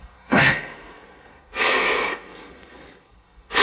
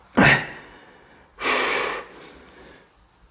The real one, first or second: second